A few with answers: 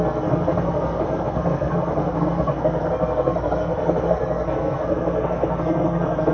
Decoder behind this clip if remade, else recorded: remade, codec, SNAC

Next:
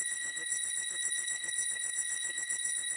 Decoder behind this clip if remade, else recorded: remade, codec, SNAC